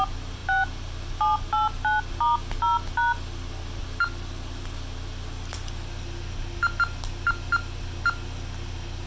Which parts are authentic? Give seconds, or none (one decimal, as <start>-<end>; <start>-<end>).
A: 0.0-9.1